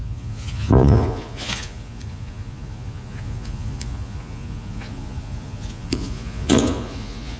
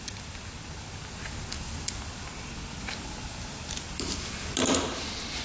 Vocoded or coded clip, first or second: first